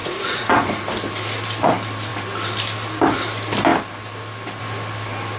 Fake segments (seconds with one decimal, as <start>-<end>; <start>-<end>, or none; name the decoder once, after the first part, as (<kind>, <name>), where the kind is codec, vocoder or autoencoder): 0.0-0.8 (vocoder, Vocos)